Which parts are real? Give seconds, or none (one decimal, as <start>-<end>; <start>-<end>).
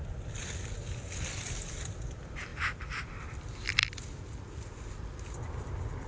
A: 0.0-6.1